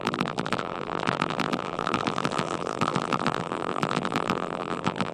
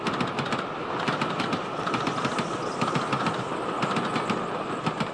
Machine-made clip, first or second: first